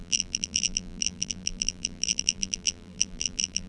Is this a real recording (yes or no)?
no